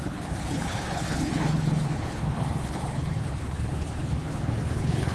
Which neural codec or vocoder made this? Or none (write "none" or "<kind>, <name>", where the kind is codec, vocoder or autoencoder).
codec, HILCodec